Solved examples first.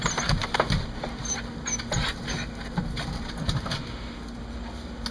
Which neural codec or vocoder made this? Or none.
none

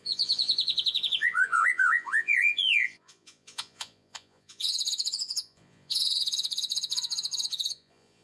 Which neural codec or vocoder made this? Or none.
vocoder, Vocos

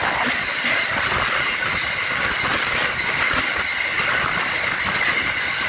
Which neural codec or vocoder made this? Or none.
none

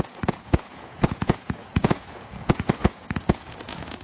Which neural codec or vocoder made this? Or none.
vocoder, Vocos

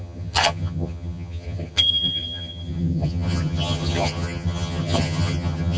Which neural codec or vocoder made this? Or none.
vocoder, HiFi-GAN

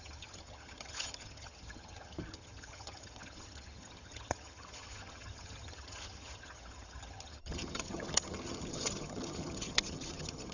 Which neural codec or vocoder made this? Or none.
vocoder, HiFi-GAN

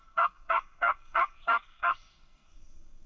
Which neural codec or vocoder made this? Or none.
codec, SNAC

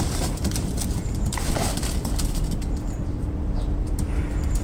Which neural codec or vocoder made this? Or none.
vocoder, BigVGAN v2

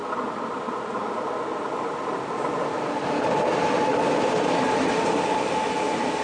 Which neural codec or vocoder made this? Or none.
none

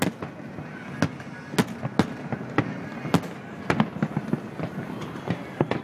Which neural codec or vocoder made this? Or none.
none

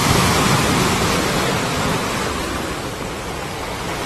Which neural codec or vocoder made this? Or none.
none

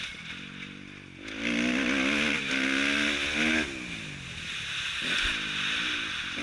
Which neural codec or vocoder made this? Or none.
none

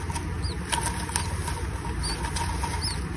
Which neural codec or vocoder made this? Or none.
none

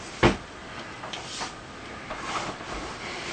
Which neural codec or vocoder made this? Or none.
none